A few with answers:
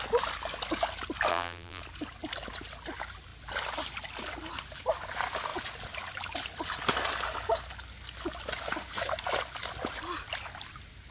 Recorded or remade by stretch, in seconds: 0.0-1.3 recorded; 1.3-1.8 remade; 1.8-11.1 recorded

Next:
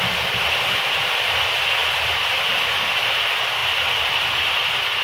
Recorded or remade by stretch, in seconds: 0.0-1.8 recorded; 1.8-2.4 remade; 2.4-5.0 recorded

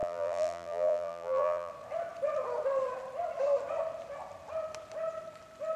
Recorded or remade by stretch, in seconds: 0.0-1.7 remade; 1.7-5.8 recorded

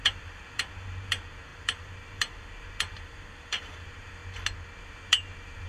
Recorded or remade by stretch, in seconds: 0.0-4.2 remade; 4.2-4.8 recorded; 4.8-5.7 remade

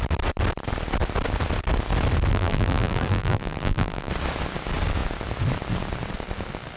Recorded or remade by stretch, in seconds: 0.0-2.3 recorded; 2.3-4.1 remade; 4.1-6.8 recorded

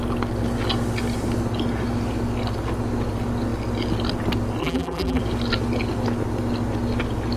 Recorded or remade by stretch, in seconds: 0.0-4.6 recorded; 4.6-5.2 remade; 5.2-7.4 recorded

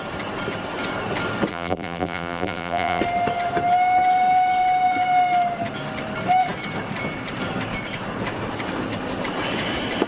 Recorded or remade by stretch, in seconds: 0.0-1.5 recorded; 1.5-3.0 remade; 3.0-10.1 recorded

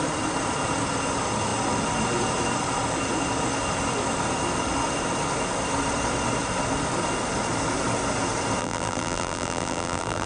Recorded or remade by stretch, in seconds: 0.0-8.6 recorded; 8.6-10.3 remade